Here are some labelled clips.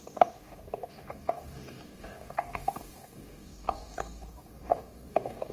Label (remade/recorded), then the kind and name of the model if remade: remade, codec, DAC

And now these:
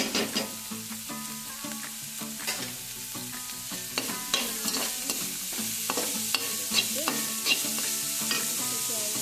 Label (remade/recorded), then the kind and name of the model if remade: recorded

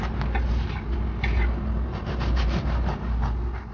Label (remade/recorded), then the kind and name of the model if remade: recorded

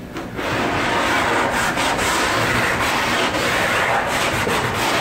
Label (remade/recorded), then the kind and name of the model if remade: recorded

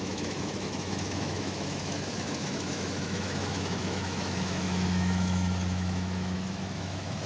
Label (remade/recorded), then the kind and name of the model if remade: remade, autoencoder, DAC-VAE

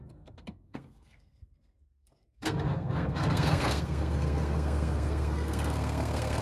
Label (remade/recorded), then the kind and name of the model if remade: remade, codec, SNAC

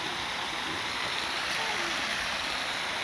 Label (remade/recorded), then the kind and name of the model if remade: remade, vocoder, BigVGAN v2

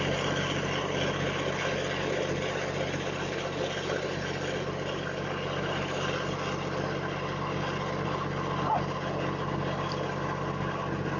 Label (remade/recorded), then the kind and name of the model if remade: recorded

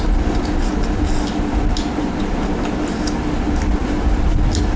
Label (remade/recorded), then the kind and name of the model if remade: recorded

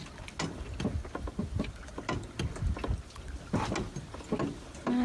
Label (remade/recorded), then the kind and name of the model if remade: recorded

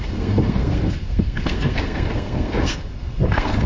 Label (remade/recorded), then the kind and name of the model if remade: remade, codec, SNAC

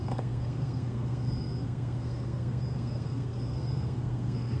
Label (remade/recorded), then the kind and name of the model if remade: remade, codec, SNAC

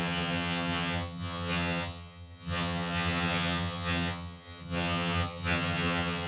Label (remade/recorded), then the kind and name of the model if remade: remade, vocoder, HiFi-GAN